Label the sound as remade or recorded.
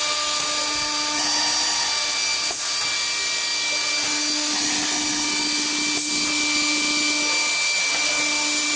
recorded